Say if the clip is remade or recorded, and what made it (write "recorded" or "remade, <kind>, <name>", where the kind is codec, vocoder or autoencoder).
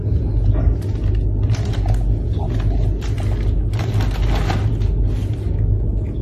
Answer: recorded